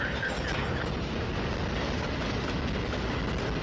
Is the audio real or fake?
real